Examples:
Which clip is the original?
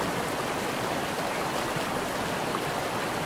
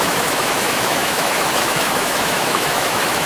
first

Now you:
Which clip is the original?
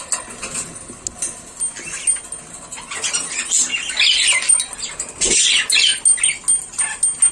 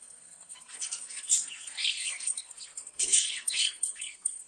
first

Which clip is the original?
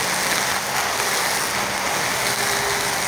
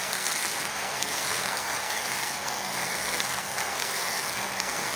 first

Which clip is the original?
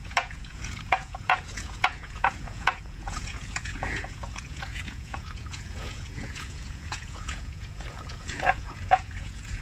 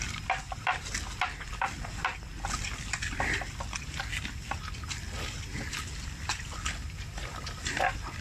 second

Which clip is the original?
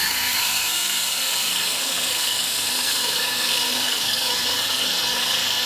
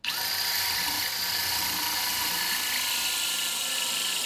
second